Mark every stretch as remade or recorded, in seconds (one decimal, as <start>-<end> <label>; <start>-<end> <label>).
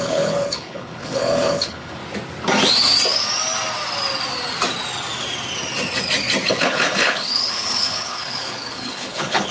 0.0-2.0 remade; 2.0-6.5 recorded; 6.5-9.5 remade